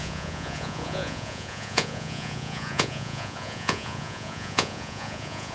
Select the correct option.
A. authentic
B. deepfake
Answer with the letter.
B